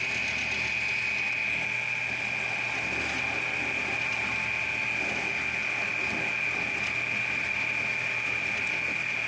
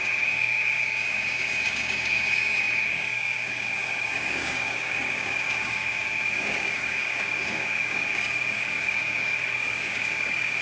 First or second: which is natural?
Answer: first